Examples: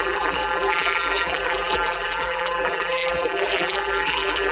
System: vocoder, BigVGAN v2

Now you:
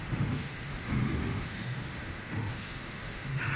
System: autoencoder, DAC-VAE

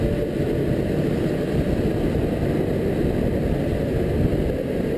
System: none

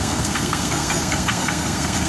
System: codec, SNAC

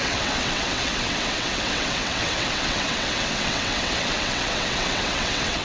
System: vocoder, WaveNeXt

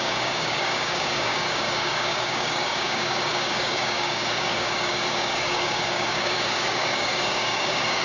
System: codec, DAC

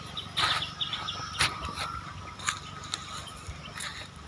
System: none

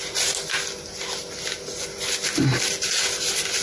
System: none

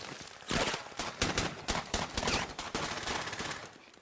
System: none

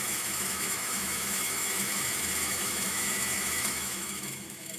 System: autoencoder, DAC-VAE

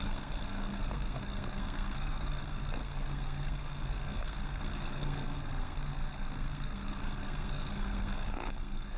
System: codec, SNAC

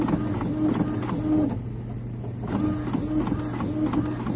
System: none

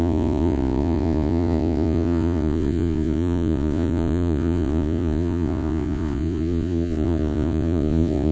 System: vocoder, Vocos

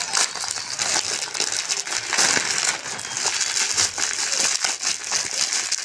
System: none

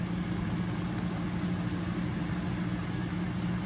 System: none